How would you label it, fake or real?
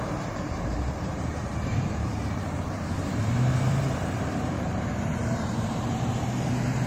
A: fake